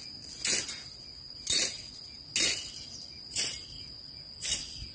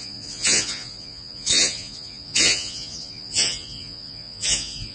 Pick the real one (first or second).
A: first